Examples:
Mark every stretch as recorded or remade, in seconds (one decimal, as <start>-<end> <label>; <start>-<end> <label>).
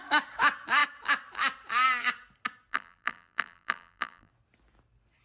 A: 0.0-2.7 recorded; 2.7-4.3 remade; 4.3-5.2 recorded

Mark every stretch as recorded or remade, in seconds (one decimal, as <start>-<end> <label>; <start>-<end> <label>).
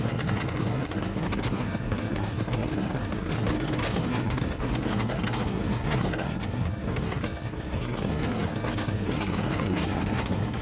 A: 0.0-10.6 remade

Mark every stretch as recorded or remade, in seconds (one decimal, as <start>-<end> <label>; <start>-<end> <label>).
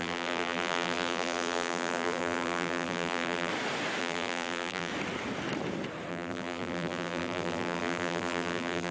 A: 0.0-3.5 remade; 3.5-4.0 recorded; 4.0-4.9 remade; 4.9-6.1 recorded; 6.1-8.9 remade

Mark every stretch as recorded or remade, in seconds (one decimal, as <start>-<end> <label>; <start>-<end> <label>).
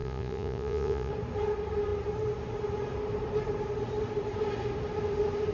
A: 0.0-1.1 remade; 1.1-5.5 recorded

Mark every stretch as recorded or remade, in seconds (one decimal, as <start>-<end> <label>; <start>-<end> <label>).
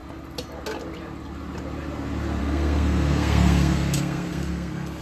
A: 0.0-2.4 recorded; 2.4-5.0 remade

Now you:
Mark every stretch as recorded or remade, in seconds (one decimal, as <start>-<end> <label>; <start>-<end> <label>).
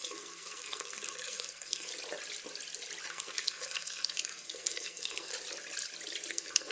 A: 0.0-1.9 remade; 1.9-3.1 recorded; 3.1-5.3 remade; 5.3-6.3 recorded; 6.3-6.7 remade